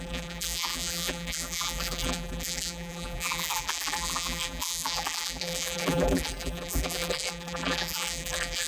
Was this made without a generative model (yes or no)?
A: no